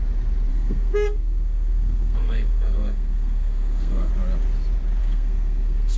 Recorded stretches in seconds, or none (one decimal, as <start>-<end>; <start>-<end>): 0.0-0.5; 4.1-5.0